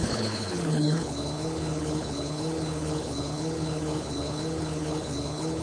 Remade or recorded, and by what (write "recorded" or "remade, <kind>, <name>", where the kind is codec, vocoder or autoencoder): remade, codec, HILCodec